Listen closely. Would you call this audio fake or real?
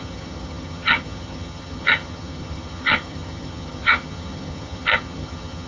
fake